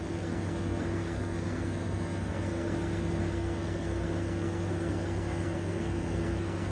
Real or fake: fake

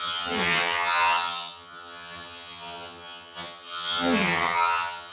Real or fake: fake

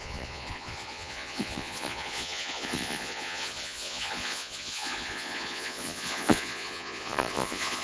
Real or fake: fake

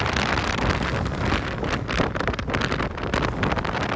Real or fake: fake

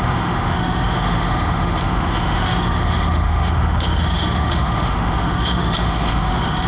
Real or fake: fake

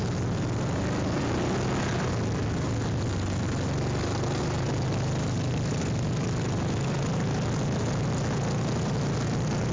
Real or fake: real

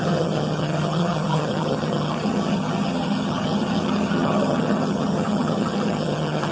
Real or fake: fake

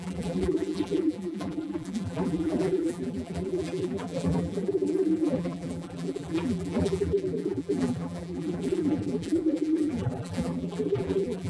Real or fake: fake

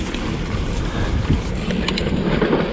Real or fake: real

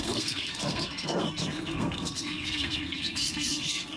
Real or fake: fake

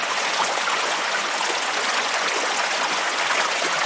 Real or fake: fake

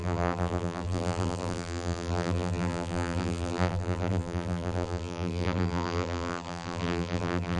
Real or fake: fake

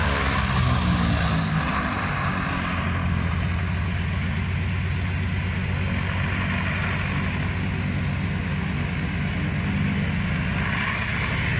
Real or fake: real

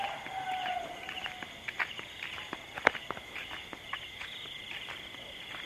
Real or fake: real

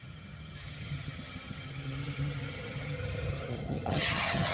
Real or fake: fake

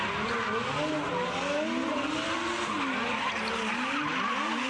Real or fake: real